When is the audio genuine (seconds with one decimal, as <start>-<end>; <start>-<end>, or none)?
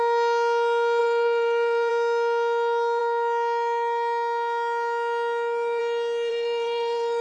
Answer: 0.0-1.0; 1.9-6.3